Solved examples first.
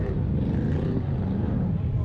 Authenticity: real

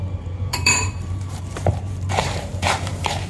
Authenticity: fake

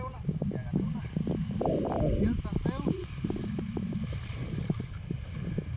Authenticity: real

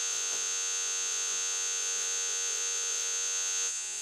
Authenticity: fake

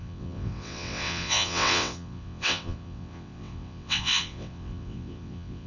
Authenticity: fake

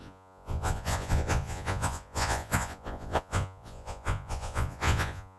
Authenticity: fake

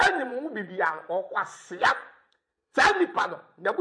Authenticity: fake